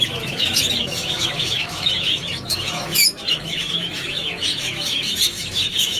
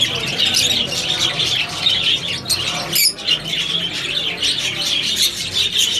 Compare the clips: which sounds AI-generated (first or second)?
first